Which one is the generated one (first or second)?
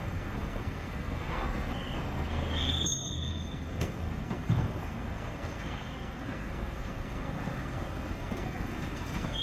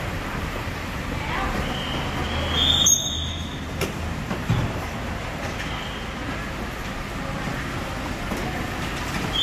first